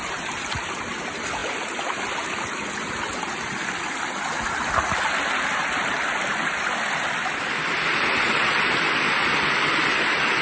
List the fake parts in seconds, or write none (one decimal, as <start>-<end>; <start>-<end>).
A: none